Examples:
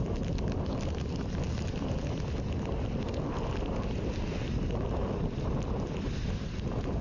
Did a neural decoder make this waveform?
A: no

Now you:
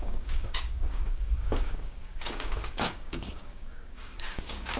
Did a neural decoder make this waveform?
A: yes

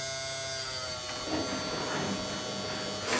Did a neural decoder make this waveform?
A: no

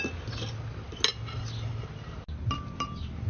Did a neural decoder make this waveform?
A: no